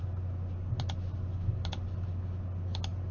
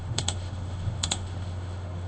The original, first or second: first